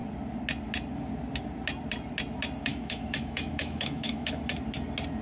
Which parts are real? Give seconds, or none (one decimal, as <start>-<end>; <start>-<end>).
0.0-2.7; 4.4-5.2